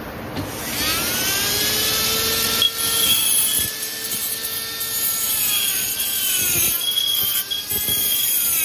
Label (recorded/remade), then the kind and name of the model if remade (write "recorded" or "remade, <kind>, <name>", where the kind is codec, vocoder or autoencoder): recorded